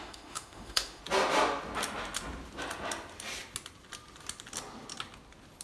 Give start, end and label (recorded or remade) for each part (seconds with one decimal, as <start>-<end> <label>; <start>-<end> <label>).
0.0-1.0 remade; 1.0-5.6 recorded

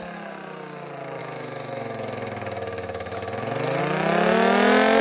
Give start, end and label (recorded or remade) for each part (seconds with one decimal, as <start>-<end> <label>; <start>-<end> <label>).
0.0-1.2 recorded; 1.2-3.8 remade; 3.8-5.0 recorded

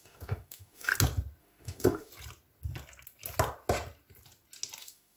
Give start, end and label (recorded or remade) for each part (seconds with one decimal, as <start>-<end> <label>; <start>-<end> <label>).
0.0-0.9 remade; 0.9-1.4 recorded; 1.4-2.1 remade; 2.1-4.8 recorded; 4.8-5.2 remade

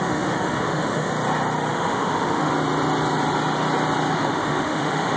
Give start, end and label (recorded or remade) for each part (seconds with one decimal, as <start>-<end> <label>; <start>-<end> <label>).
0.0-1.1 remade; 1.1-1.7 recorded; 1.7-2.5 remade; 2.5-4.1 recorded; 4.1-5.2 remade

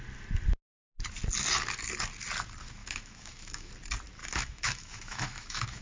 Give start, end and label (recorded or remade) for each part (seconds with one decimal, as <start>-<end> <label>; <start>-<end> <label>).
0.0-2.8 recorded; 2.8-3.7 remade; 3.7-4.2 recorded; 4.2-5.8 remade

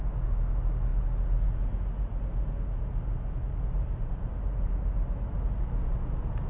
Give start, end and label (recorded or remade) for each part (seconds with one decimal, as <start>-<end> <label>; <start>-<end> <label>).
0.0-6.5 recorded

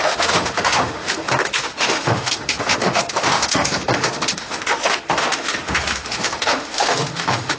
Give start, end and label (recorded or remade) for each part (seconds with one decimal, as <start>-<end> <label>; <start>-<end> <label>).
0.0-7.6 remade